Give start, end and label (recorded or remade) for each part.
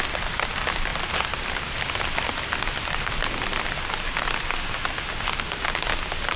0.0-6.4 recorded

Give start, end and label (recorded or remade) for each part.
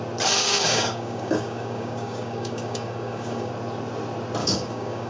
0.0-0.4 recorded; 0.4-3.5 remade; 3.5-4.4 recorded; 4.4-5.1 remade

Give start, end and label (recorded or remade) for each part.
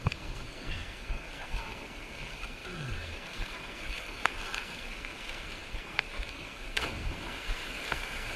0.0-8.4 remade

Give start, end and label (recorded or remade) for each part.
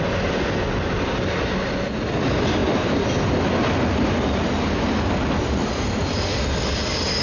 0.0-7.2 recorded